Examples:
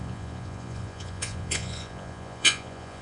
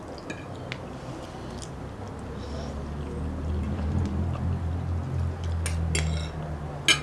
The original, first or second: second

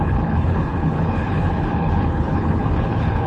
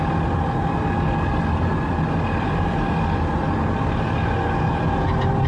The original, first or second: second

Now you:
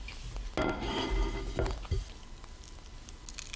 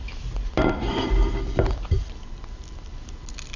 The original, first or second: first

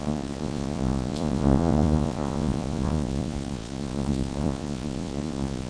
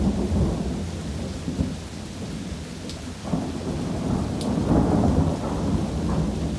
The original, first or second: second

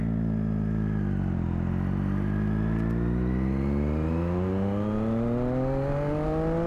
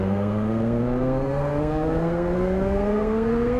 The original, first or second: first